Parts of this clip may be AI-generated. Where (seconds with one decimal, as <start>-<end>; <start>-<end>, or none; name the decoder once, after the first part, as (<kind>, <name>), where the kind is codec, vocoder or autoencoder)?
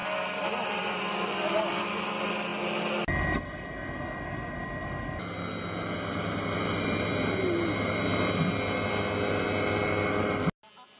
none